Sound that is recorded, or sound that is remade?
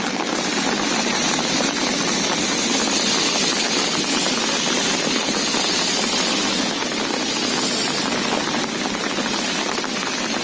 recorded